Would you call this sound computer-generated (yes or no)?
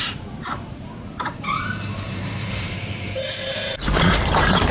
yes